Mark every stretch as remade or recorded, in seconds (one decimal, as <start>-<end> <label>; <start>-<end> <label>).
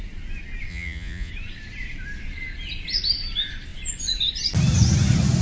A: 0.0-0.7 recorded; 0.7-1.3 remade; 1.3-5.4 recorded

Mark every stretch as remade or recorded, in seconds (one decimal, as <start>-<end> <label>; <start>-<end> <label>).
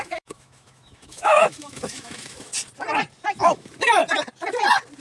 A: 0.0-2.5 remade; 2.5-3.4 recorded; 3.4-4.0 remade; 4.0-5.0 recorded